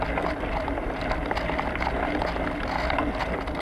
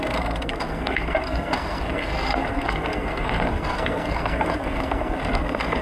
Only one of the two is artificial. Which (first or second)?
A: second